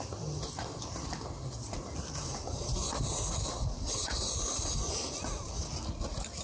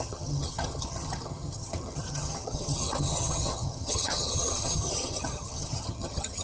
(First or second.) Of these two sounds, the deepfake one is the second